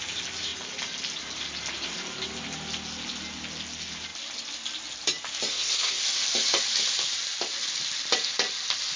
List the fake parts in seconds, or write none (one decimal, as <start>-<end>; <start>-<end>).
5.5-6.0